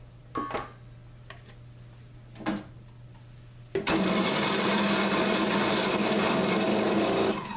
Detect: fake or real real